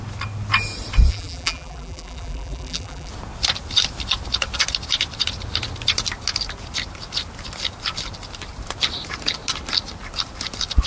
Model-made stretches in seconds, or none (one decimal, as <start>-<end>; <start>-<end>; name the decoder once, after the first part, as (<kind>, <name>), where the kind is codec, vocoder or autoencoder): 1.1-3.1 (vocoder, BigVGAN v2)